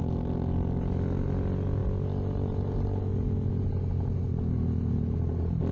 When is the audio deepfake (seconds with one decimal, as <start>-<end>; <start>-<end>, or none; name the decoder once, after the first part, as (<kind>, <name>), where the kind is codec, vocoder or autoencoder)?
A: none